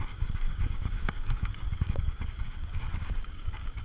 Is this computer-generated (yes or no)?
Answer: yes